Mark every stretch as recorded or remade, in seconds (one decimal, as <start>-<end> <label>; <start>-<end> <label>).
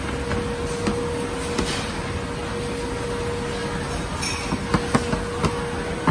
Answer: 0.0-6.1 recorded